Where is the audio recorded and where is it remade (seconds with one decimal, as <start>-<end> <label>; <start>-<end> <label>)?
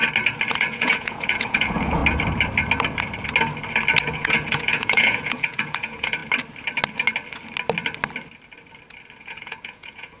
0.0-0.5 recorded; 0.5-2.0 remade; 2.0-4.0 recorded; 4.0-6.2 remade; 6.2-9.2 recorded; 9.2-10.2 remade